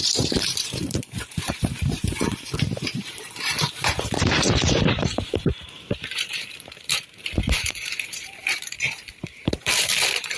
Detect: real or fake fake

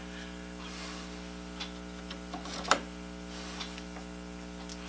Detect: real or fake real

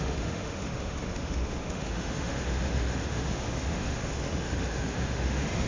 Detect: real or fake fake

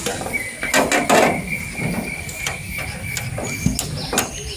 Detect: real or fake real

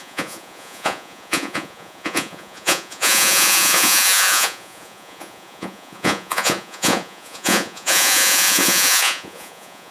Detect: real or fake fake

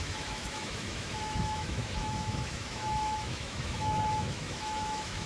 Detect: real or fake fake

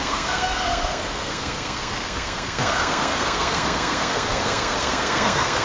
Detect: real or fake fake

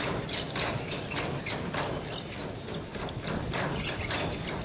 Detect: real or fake real